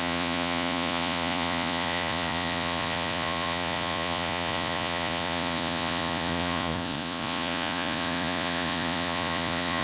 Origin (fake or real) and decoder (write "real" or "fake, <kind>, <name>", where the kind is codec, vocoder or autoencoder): fake, vocoder, Vocos